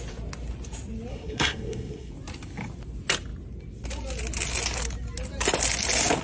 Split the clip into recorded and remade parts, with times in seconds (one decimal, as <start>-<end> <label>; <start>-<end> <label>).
0.0-1.1 recorded; 1.1-2.1 remade; 2.1-6.2 recorded